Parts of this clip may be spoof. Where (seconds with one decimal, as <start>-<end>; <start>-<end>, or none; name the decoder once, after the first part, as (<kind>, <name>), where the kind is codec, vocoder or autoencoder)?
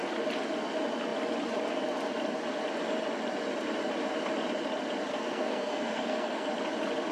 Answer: 5.1-6.5 (codec, SNAC)